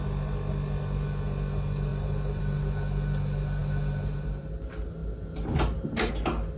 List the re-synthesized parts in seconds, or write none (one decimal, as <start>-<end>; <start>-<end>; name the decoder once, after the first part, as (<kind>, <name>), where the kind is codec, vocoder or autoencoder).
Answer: 1.9-2.4 (vocoder, BigVGAN v2)